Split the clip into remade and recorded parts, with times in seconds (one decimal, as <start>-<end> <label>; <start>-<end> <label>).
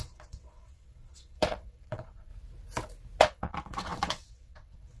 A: 0.0-2.3 remade; 2.3-3.2 recorded; 3.2-5.0 remade